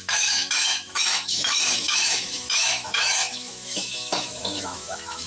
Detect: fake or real fake